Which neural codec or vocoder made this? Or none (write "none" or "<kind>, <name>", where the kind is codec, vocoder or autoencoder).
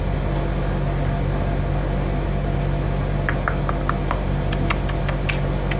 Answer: none